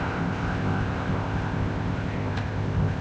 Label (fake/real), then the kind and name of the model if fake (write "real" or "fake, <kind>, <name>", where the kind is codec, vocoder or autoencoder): fake, codec, ZipCodec